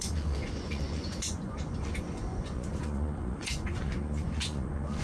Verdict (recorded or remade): remade